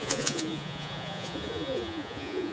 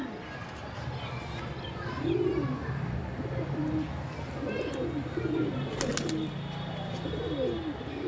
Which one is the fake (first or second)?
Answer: first